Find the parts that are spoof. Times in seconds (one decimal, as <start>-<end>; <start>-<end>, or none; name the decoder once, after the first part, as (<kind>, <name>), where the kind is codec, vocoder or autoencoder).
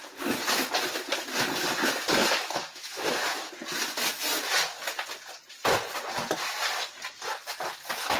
2.2-3.5 (autoencoder, DAC-VAE)